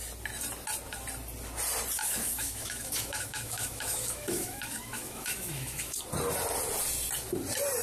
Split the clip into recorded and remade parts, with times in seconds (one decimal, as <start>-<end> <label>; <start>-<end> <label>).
0.0-2.0 recorded; 2.0-6.0 remade; 6.0-7.8 recorded